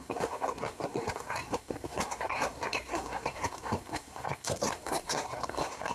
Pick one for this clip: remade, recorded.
remade